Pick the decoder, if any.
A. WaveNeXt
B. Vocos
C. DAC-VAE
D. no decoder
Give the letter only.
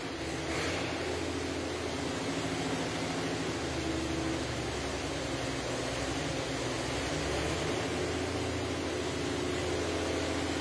D